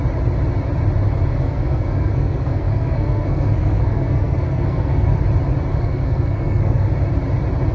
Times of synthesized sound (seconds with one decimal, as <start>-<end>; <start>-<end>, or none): 1.3-5.2; 5.7-6.9